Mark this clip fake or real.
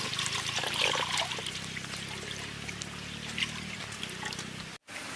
real